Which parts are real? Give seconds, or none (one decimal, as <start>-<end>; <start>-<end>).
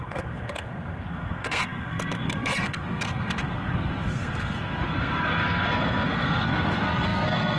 none